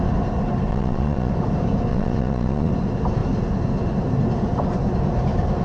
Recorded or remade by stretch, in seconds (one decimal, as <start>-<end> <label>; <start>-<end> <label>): 0.0-0.7 recorded; 0.7-1.3 remade; 1.3-1.9 recorded; 1.9-2.7 remade; 2.7-5.6 recorded